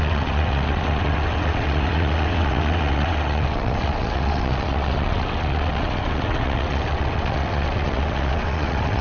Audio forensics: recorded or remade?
remade